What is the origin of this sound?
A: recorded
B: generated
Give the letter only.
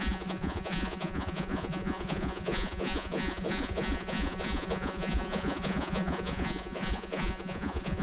B